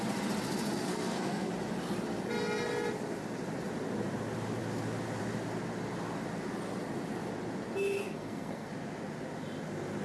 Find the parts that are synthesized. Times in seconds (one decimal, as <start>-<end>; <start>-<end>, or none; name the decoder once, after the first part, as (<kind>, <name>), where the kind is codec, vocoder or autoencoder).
0.9-1.5 (codec, SNAC); 8.0-8.7